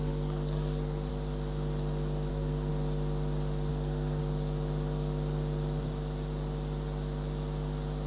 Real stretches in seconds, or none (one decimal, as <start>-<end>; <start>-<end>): 1.1-2.3; 2.7-3.7; 4.2-8.1